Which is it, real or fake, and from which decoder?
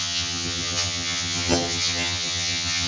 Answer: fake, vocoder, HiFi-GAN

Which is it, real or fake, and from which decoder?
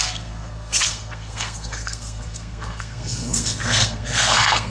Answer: fake, codec, SNAC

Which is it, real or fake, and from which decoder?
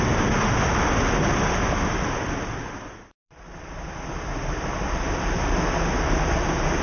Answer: real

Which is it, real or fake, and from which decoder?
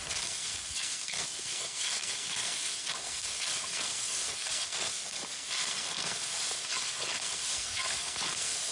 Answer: fake, codec, SNAC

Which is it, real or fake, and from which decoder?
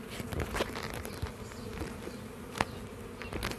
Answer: real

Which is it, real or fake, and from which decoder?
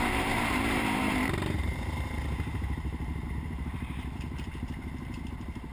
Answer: fake, vocoder, BigVGAN v2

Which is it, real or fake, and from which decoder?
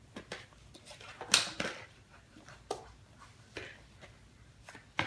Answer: real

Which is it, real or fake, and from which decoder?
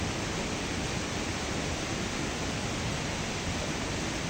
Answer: real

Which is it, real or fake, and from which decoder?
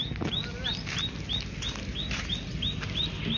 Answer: real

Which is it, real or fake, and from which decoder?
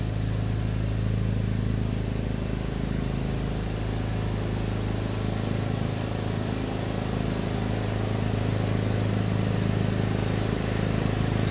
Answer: real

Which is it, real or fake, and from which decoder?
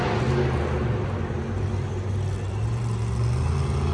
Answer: real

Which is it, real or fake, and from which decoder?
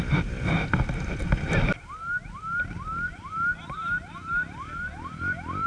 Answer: real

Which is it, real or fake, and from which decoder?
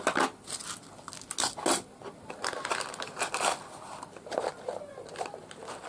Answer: real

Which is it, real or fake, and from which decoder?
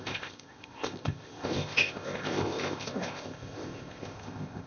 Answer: fake, codec, ZipCodec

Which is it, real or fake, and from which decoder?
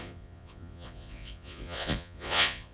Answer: fake, vocoder, Vocos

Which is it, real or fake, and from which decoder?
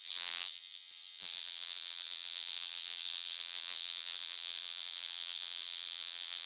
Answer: fake, vocoder, BigVGAN v2